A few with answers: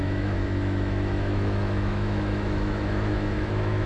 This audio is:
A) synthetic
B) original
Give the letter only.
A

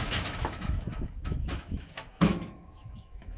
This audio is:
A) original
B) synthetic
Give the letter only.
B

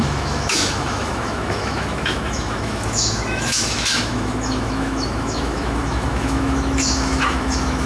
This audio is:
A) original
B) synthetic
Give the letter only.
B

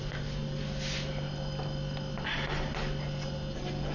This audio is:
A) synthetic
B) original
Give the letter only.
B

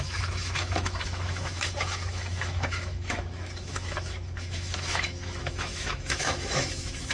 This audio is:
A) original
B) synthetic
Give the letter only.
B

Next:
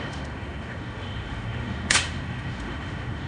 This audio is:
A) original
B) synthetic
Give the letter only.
B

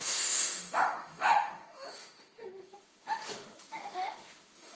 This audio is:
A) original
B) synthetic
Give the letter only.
B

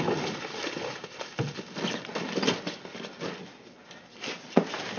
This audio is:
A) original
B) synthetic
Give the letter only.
A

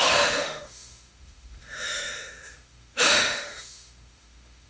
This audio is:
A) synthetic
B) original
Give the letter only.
A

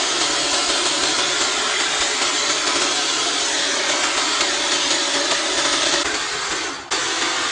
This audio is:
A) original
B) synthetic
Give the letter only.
A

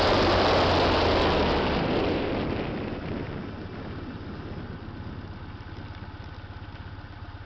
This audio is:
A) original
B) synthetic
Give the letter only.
A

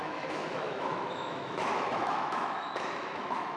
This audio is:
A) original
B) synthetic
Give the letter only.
B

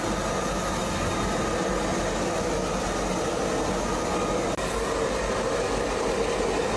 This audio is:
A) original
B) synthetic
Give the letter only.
A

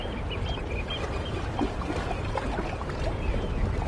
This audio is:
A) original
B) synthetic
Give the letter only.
A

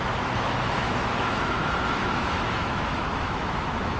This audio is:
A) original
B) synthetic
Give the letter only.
B